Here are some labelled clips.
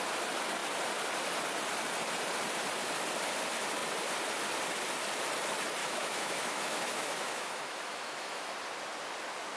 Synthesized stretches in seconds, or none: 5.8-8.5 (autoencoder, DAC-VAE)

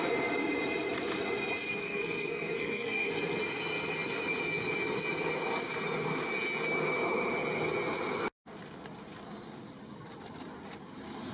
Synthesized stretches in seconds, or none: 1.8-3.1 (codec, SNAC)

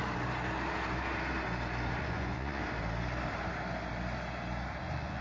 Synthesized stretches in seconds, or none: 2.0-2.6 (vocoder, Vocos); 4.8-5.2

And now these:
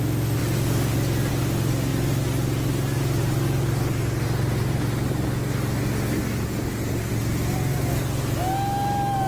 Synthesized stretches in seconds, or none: none